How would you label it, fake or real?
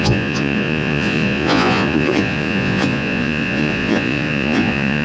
fake